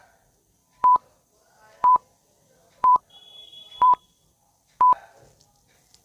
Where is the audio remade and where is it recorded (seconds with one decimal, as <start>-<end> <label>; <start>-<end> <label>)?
0.0-0.6 recorded; 0.6-3.0 remade; 3.0-3.5 recorded; 3.5-4.2 remade; 4.2-6.0 recorded